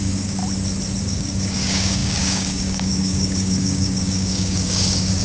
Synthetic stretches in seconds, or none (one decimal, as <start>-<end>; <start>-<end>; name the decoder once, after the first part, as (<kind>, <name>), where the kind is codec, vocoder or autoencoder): 0.0-0.4 (codec, DAC); 1.0-5.2